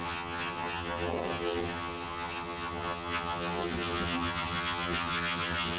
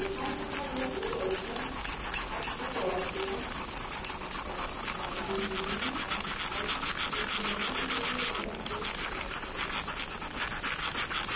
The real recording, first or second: second